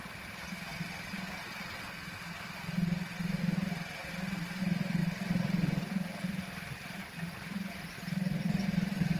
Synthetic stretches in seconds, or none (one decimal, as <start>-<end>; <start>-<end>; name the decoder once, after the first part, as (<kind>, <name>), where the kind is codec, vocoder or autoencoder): 5.0-9.2 (vocoder, BigVGAN v2)